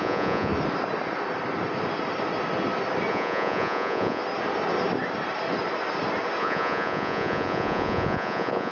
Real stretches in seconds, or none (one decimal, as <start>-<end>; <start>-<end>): 0.5-3.1; 4.2-6.4